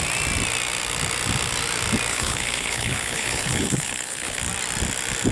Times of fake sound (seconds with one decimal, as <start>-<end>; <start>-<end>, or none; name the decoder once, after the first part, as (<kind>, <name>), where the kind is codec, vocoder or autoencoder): 2.1-4.4 (codec, HILCodec)